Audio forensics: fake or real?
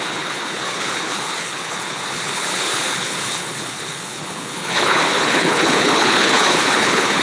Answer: fake